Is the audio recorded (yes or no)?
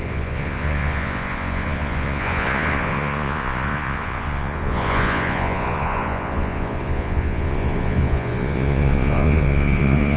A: no